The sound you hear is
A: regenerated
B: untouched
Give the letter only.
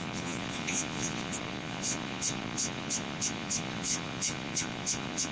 A